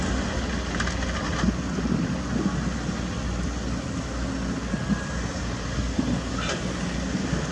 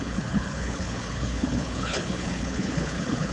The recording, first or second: first